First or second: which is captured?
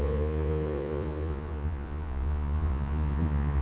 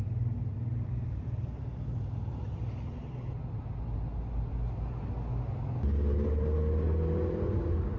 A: second